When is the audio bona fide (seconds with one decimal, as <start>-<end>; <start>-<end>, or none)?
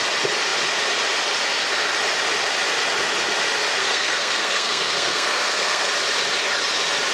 0.0-3.8; 5.9-7.1